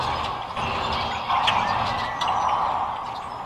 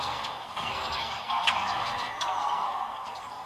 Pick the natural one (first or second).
first